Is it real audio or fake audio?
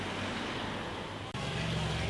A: real